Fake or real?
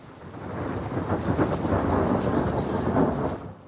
real